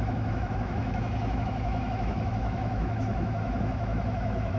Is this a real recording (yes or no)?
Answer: no